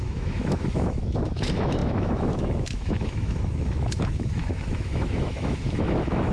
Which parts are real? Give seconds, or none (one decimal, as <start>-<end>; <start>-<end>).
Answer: none